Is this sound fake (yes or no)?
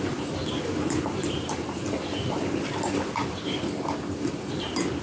yes